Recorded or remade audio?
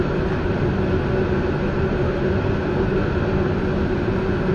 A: recorded